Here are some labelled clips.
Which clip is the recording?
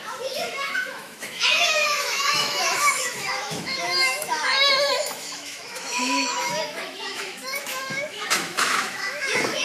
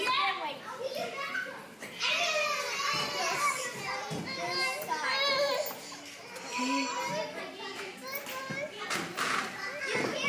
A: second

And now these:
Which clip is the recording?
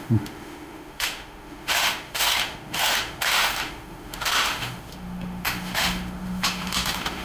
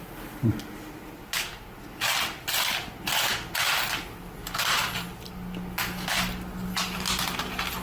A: second